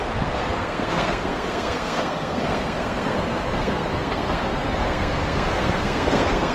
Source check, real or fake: fake